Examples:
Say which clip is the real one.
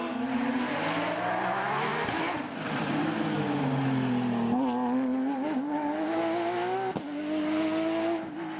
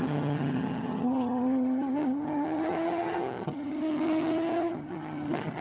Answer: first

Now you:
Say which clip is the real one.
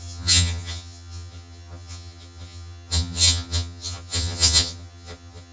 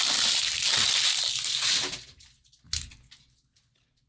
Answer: second